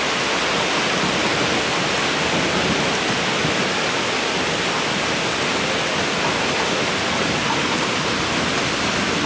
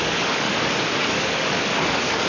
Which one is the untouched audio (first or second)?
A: first